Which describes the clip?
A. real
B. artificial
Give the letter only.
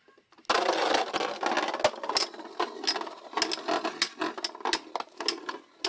A